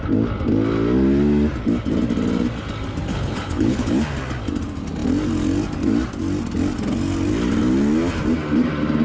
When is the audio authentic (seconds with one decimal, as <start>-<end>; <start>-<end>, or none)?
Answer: 0.0-3.1; 3.9-9.0